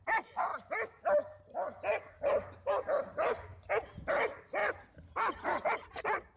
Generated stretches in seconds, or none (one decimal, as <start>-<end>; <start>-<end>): 0.0-0.5; 2.2-3.5; 4.1-6.4